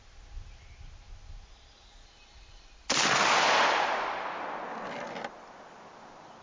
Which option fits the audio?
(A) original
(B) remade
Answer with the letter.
A